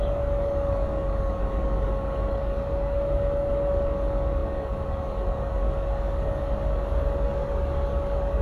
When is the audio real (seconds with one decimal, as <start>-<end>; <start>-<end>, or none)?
none